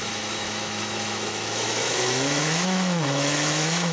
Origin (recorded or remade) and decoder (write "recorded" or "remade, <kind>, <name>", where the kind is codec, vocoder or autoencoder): remade, autoencoder, DAC-VAE